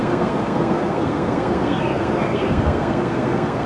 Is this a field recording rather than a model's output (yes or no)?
no